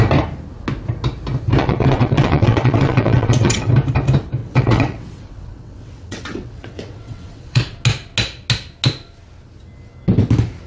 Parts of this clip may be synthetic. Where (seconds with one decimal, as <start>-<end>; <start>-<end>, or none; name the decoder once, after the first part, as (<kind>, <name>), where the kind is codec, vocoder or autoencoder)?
1.6-3.7 (vocoder, WaveNeXt); 4.4-7.6